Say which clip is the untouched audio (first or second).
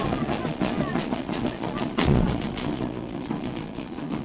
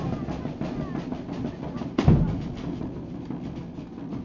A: second